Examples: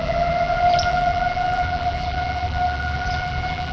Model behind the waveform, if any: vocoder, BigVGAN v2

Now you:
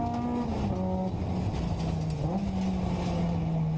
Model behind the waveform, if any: none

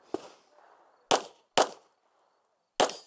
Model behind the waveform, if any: none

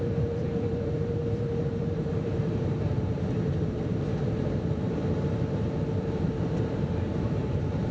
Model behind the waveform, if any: vocoder, BigVGAN v2